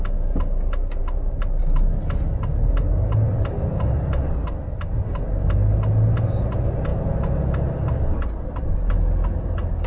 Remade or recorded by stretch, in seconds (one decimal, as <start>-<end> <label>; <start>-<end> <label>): 0.0-9.9 recorded